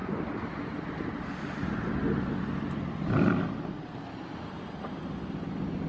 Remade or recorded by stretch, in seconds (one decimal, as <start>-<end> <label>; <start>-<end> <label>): 0.0-1.0 remade; 1.0-5.9 recorded